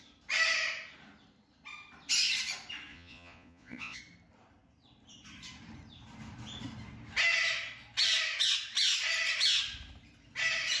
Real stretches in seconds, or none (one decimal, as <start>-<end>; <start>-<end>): 0.0-2.9; 4.0-10.8